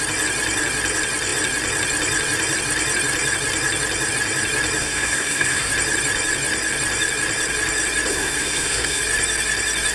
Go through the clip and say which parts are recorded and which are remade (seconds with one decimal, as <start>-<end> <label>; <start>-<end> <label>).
0.0-4.8 recorded; 4.8-5.7 remade; 5.7-8.1 recorded; 8.1-9.0 remade; 9.0-9.9 recorded